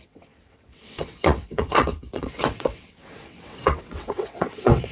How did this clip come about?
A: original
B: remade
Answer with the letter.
B